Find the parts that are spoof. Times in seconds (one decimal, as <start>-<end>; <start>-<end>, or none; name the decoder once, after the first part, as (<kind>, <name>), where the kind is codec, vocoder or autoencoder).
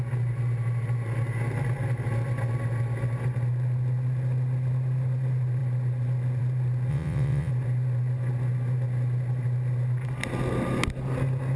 6.9-7.5 (vocoder, WaveNeXt)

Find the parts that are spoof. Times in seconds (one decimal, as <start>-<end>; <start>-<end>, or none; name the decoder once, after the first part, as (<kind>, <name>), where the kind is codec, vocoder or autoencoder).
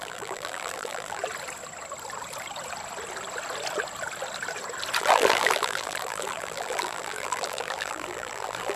0.0-1.2 (vocoder, BigVGAN v2); 5.0-8.8